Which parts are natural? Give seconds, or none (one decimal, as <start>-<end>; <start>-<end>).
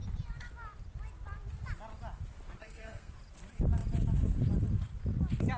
0.0-2.6; 3.1-5.6